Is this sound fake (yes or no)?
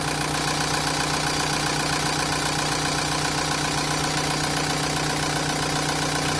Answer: no